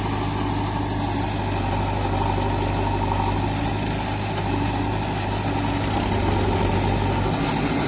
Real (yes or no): yes